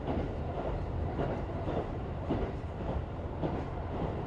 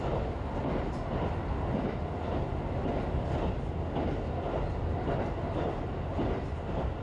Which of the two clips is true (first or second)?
second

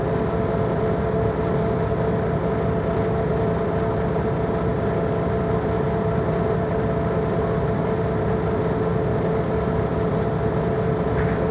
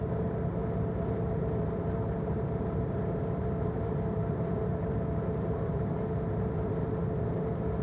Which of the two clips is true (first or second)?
first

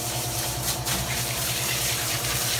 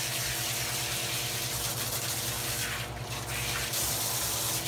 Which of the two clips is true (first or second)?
second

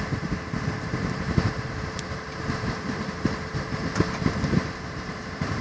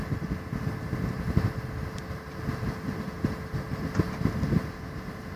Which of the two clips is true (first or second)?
second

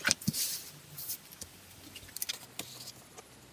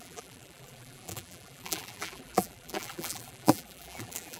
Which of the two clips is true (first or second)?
first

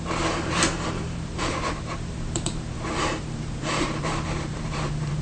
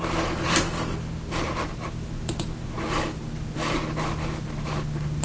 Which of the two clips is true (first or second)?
second